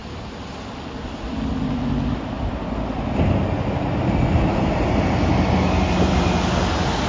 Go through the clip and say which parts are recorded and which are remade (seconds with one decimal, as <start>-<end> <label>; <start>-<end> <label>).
0.0-0.5 remade; 0.5-4.5 recorded; 4.5-5.0 remade; 5.0-7.1 recorded